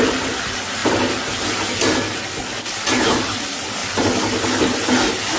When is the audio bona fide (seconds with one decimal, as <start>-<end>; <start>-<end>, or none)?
0.0-5.4